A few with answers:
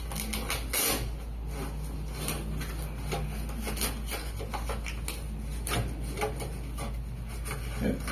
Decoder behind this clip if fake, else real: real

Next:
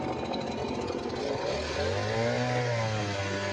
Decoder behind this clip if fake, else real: real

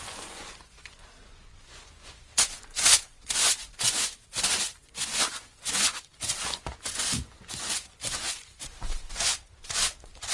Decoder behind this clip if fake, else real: fake, vocoder, Vocos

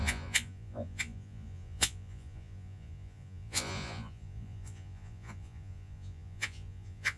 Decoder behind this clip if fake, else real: fake, vocoder, Vocos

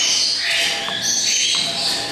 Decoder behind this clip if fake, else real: real